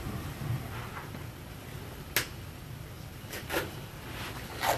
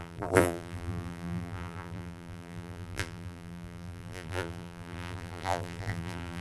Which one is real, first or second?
first